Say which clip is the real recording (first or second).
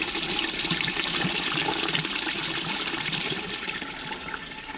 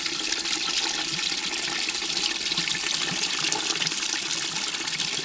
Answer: second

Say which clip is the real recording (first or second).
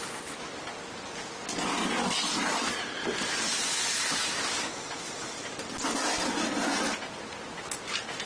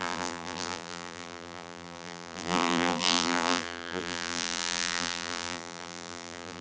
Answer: first